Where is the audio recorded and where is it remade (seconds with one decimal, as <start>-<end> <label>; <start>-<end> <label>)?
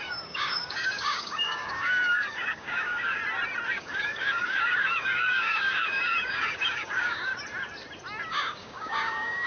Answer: 0.0-3.2 remade; 3.2-3.7 recorded; 3.7-7.3 remade; 7.3-8.3 recorded; 8.3-9.5 remade